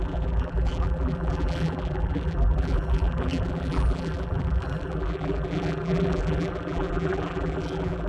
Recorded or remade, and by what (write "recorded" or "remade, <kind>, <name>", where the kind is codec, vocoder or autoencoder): remade, vocoder, BigVGAN v2